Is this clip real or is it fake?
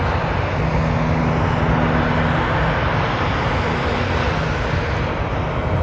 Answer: real